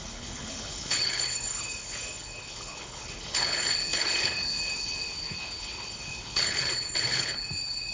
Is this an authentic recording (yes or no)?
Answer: no